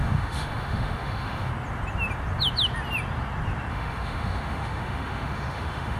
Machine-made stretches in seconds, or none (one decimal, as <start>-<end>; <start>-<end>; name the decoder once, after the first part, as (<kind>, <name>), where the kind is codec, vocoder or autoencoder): 0.0-1.5 (autoencoder, DAC-VAE); 3.7-6.0